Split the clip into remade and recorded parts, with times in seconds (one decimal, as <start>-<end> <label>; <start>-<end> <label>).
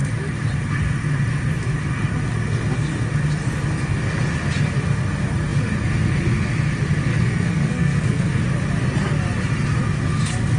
0.0-7.1 recorded; 7.1-8.4 remade; 8.4-10.6 recorded